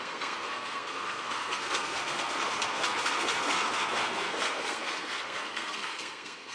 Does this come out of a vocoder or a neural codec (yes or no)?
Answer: yes